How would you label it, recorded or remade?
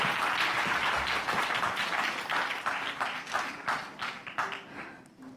recorded